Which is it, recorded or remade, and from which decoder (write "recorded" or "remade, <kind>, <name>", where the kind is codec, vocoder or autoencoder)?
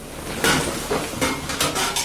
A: recorded